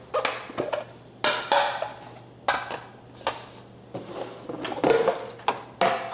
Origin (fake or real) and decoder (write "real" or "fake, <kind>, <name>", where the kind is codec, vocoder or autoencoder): real